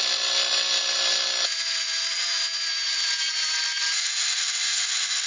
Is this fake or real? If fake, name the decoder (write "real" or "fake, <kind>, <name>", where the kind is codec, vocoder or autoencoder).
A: real